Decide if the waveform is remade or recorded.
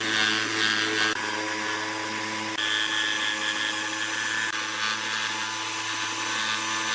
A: recorded